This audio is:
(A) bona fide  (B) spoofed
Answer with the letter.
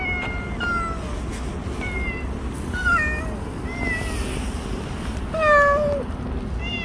A